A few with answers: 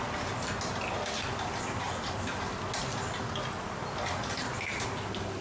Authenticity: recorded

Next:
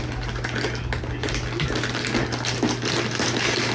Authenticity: recorded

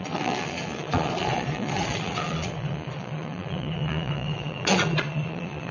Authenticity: remade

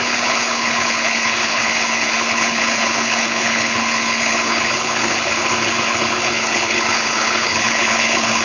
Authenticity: remade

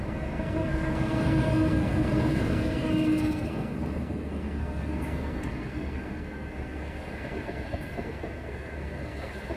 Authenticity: remade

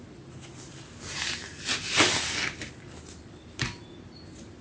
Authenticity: recorded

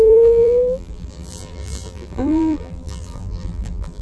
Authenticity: remade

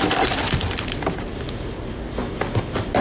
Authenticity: recorded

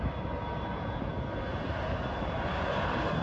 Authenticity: recorded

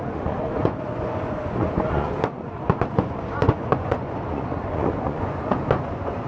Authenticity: remade